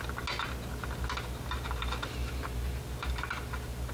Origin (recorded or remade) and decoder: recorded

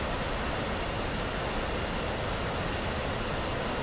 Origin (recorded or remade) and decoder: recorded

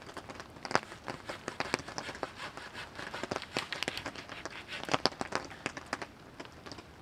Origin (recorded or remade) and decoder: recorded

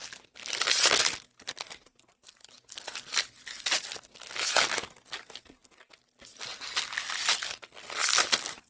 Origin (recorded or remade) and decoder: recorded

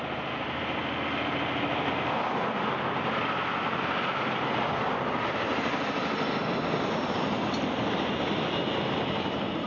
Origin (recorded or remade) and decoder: recorded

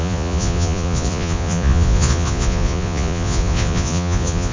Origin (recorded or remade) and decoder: remade, vocoder, Vocos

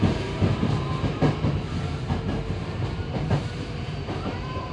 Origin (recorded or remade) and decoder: remade, vocoder, BigVGAN v2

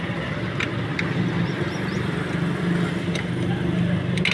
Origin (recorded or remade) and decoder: recorded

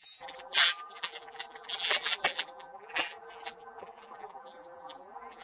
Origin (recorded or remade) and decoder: remade, vocoder, BigVGAN v2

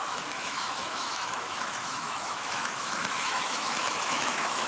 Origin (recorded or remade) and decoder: remade, autoencoder, DAC-VAE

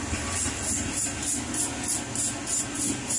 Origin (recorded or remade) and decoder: recorded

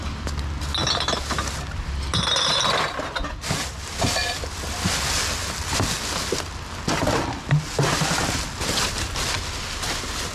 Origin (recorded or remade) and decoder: recorded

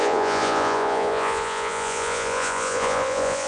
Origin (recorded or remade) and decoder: remade, vocoder, Vocos